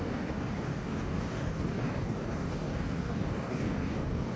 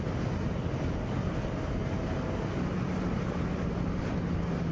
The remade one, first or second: first